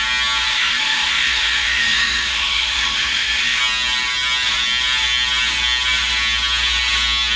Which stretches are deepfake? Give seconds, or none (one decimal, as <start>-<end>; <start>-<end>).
0.5-3.6